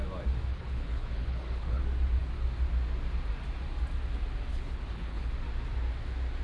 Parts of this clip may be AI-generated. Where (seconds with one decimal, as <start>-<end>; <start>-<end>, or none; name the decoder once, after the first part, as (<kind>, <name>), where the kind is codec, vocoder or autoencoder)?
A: 0.5-1.8 (codec, HILCodec); 4.5-5.3